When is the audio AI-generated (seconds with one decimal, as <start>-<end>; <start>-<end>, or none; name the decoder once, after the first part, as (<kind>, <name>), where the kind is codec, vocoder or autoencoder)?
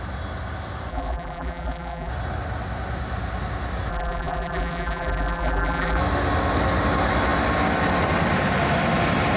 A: 0.9-2.1 (vocoder, BigVGAN v2); 3.9-6.0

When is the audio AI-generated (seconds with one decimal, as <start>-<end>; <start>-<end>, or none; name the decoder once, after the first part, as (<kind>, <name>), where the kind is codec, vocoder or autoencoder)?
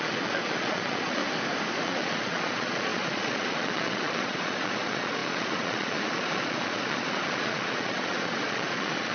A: 0.0-1.2 (vocoder, Vocos); 1.8-9.1